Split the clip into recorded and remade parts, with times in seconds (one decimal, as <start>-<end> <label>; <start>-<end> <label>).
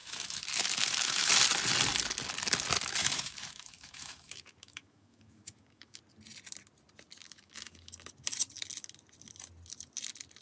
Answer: 0.0-1.3 remade; 1.3-3.0 recorded; 3.0-6.0 remade; 6.0-7.2 recorded; 7.2-7.9 remade; 7.9-10.4 recorded